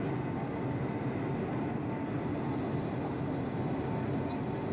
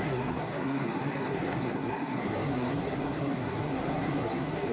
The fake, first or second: second